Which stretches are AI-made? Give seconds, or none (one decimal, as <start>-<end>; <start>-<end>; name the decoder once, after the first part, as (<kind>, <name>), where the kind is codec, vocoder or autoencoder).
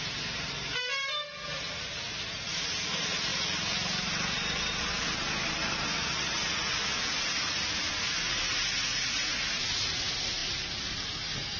none